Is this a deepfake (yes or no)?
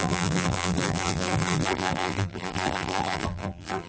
yes